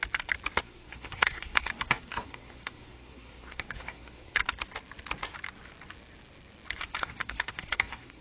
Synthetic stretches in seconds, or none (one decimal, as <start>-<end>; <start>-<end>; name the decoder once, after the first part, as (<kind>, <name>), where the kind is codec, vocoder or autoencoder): 0.6-4.4 (codec, SNAC); 7.0-8.2